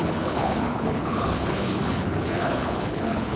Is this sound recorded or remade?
remade